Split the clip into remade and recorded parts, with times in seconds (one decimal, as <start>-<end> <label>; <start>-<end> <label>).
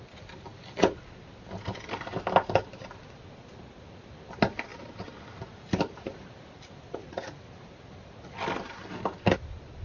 0.0-4.7 recorded; 4.7-8.1 remade; 8.1-9.8 recorded